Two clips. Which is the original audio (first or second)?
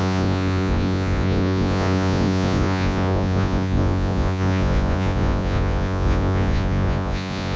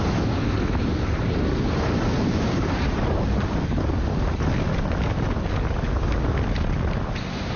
second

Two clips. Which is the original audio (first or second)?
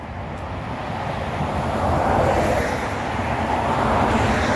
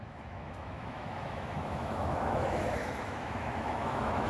first